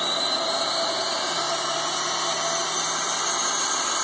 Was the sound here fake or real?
real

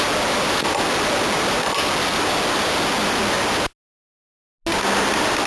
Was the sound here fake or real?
real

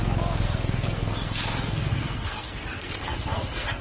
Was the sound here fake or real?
fake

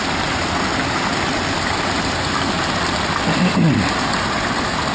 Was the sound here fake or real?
real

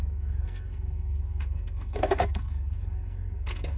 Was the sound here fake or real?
fake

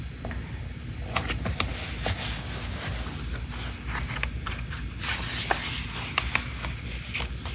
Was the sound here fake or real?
real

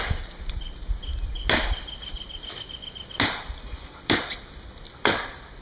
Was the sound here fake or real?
real